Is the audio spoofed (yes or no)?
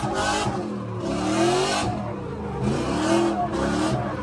no